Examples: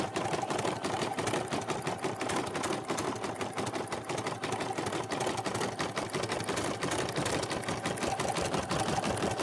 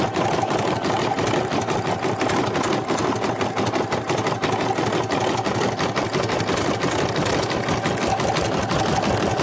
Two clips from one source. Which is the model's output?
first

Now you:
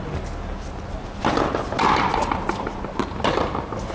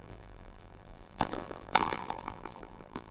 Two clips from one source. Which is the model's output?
second